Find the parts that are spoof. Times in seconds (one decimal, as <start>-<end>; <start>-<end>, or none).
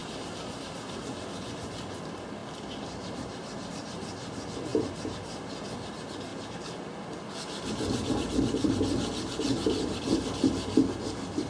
0.0-6.3